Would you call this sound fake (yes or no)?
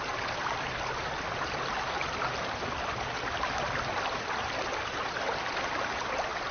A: no